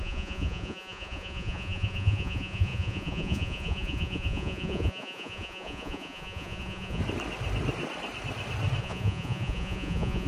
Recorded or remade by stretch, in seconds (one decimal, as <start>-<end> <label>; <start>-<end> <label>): 0.0-7.0 remade; 7.0-8.8 recorded; 8.8-10.3 remade